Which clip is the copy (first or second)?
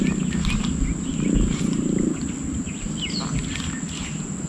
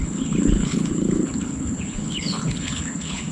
second